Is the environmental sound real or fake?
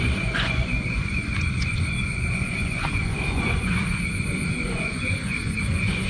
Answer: fake